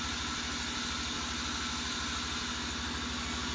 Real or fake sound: real